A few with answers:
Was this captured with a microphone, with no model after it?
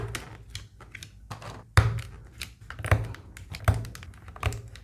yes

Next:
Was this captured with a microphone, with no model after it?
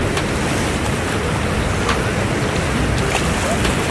yes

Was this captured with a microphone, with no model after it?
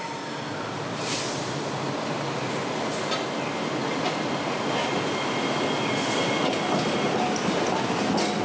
yes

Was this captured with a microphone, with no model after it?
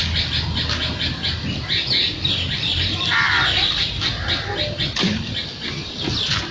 yes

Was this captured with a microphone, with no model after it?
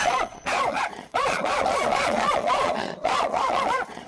no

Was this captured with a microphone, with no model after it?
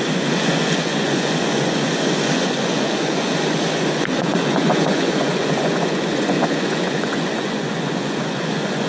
no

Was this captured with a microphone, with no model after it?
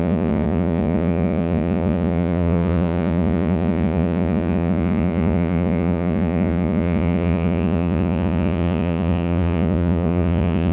no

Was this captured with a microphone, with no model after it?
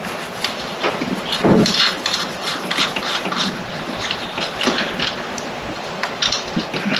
yes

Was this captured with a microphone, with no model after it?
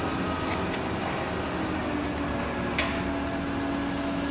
yes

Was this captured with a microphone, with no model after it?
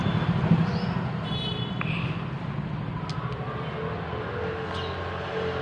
yes